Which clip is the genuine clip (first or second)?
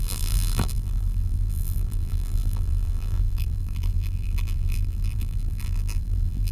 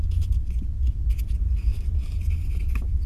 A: second